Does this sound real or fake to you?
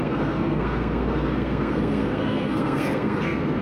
fake